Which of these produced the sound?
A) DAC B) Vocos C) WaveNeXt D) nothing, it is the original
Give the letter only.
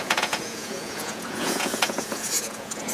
B